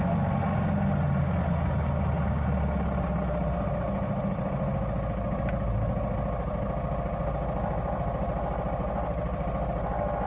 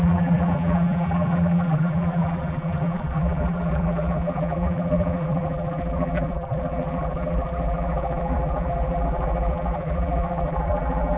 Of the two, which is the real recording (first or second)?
first